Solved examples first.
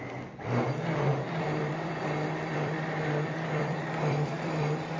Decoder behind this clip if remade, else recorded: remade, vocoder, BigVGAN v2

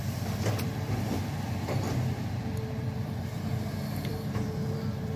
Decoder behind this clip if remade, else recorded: remade, vocoder, BigVGAN v2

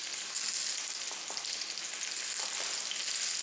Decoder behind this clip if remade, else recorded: recorded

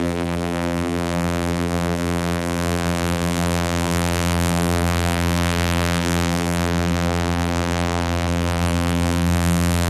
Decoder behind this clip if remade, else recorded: remade, vocoder, BigVGAN v2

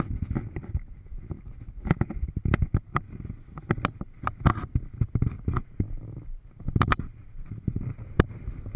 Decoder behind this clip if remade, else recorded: recorded